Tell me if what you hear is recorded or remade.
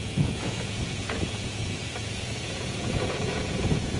remade